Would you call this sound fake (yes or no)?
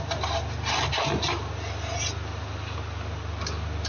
no